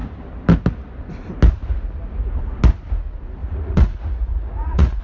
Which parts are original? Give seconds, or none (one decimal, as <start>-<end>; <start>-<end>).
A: 0.0-3.4